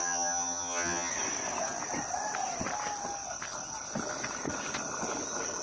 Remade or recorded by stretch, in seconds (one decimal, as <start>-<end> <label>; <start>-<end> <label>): 0.0-1.1 remade; 1.1-5.6 recorded